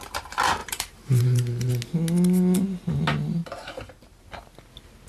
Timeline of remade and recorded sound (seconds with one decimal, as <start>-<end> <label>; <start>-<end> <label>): 0.0-0.6 recorded; 0.6-1.7 remade; 1.7-3.4 recorded; 3.4-4.2 remade; 4.2-5.1 recorded